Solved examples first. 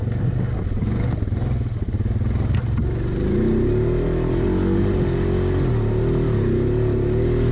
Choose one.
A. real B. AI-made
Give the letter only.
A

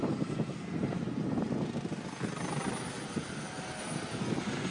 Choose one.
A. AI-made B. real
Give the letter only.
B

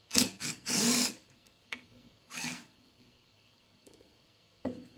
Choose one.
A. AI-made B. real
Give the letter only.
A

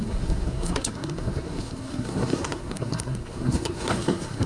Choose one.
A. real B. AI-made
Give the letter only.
B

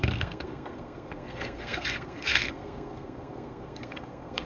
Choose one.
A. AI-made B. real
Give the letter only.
A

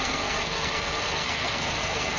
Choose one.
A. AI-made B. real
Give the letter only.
A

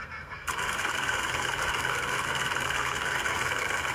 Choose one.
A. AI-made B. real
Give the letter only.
A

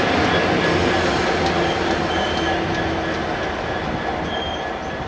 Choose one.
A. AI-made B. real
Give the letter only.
B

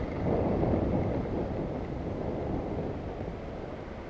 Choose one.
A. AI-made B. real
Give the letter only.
B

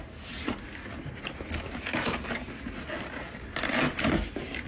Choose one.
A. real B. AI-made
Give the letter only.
A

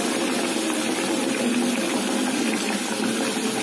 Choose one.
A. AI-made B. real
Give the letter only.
B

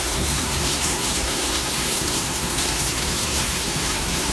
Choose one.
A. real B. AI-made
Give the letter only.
B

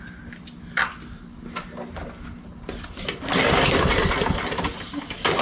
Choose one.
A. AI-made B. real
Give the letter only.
B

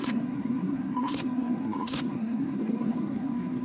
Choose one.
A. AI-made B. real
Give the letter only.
A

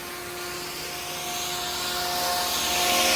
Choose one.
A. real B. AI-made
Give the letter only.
A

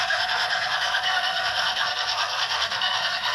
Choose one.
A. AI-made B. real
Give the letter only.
A